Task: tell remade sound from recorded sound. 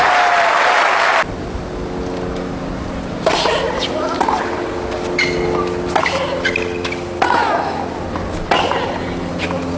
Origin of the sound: recorded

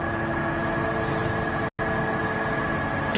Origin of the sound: recorded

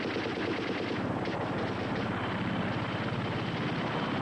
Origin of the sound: recorded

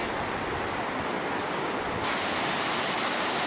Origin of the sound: recorded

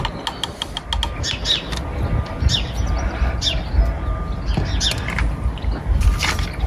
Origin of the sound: recorded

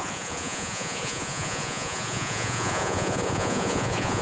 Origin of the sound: remade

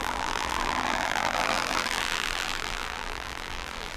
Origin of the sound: remade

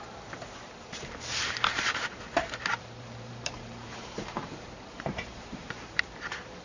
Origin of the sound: remade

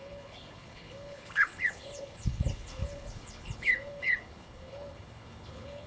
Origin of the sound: remade